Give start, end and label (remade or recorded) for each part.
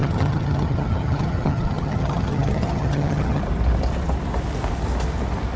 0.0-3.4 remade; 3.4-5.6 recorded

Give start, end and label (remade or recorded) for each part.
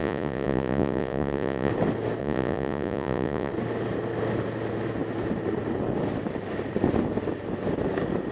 0.0-1.7 remade; 1.7-2.2 recorded; 2.2-3.5 remade; 3.5-8.3 recorded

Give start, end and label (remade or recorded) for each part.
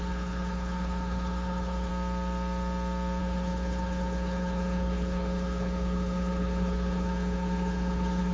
0.0-1.9 remade; 1.9-3.2 recorded; 3.2-8.3 remade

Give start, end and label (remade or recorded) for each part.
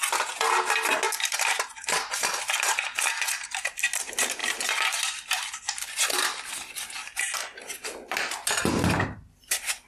0.0-4.4 recorded; 4.4-7.3 remade; 7.3-9.9 recorded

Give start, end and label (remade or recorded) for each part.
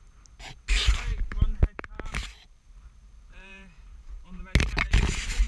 0.0-1.1 recorded; 1.1-4.4 remade; 4.4-5.5 recorded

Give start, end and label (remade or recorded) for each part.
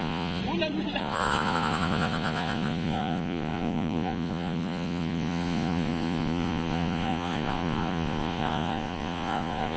0.0-0.4 remade; 0.4-1.0 recorded; 1.0-9.8 remade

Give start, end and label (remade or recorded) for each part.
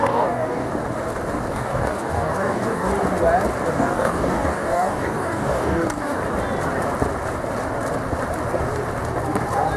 0.0-0.7 remade; 0.7-1.5 recorded; 1.5-2.9 remade; 2.9-3.7 recorded; 3.7-6.2 remade; 6.2-9.8 recorded